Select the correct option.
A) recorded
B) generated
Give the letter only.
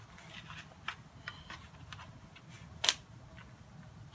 A